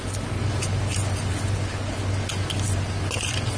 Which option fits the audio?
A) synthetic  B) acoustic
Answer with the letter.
B